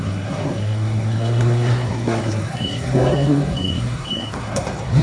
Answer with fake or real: fake